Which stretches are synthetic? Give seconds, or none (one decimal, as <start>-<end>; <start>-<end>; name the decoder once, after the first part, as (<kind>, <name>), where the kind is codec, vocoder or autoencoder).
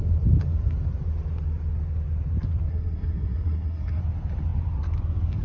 2.7-4.0 (codec, SNAC)